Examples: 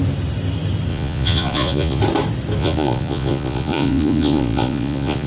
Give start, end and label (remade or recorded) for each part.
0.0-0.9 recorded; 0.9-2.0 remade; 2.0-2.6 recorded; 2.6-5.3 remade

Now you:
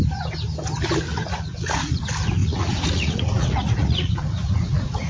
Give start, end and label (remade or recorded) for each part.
0.0-1.1 recorded; 1.1-2.0 remade; 2.0-2.4 recorded; 2.4-5.1 remade

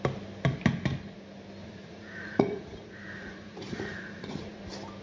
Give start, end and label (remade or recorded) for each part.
0.0-1.6 recorded; 1.6-4.6 remade; 4.6-5.0 recorded

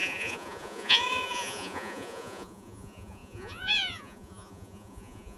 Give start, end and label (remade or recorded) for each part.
0.0-5.4 remade